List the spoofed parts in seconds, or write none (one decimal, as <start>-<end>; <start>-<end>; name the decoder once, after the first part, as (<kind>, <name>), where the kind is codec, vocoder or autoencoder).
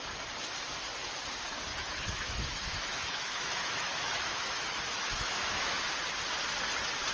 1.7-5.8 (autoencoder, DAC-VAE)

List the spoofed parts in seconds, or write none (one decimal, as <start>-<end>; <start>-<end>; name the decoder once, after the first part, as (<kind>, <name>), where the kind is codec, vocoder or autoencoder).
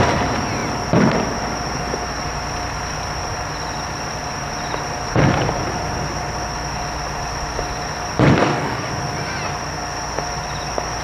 8.4-8.9 (codec, DAC)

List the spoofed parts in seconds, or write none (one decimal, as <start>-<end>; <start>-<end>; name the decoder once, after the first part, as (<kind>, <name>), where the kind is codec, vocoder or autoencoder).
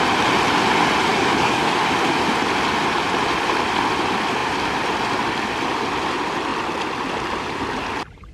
1.1-1.9 (codec, DAC)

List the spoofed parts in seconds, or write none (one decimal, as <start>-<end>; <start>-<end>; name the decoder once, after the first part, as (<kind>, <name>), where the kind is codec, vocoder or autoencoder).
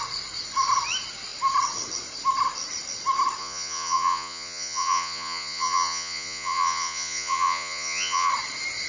3.4-8.3 (vocoder, Vocos)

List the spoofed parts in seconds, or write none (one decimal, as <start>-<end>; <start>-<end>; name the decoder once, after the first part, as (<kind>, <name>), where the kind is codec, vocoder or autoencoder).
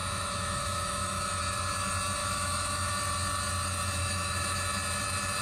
0.0-1.4 (autoencoder, DAC-VAE); 2.2-2.9; 4.0-4.6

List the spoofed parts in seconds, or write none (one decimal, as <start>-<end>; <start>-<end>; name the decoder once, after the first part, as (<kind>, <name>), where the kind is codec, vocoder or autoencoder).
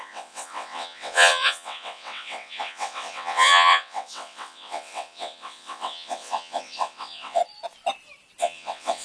0.0-7.4 (vocoder, WaveNeXt); 8.4-9.0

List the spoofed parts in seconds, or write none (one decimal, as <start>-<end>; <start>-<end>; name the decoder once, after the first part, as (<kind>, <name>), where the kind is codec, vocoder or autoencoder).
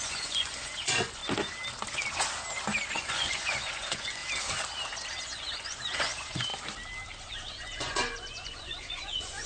0.0-1.2 (vocoder, Vocos); 2.9-4.2; 5.2-6.5; 7.2-9.5